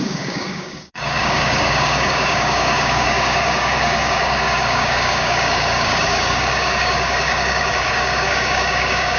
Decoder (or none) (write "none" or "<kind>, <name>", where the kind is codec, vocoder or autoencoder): codec, DAC